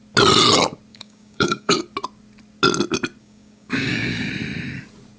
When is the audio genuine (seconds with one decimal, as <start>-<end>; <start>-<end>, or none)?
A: 0.0-0.9; 1.8-3.2; 4.3-5.2